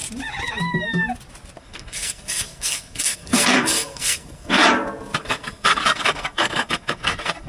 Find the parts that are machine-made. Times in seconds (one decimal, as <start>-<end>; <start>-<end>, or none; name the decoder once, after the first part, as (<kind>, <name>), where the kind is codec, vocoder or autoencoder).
1.6-4.6 (codec, SNAC); 5.2-7.5